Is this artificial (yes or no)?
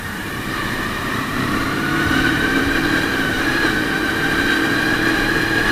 yes